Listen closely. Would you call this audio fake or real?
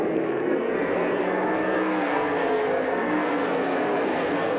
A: fake